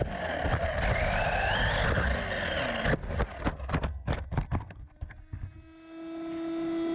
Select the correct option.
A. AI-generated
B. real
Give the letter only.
B